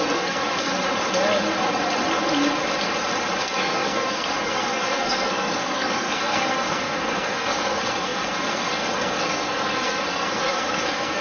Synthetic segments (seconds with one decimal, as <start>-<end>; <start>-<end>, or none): 0.0-0.7; 3.4-11.2